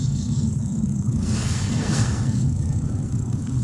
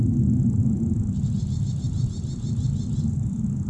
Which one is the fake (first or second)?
first